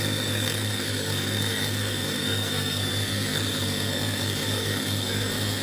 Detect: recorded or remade remade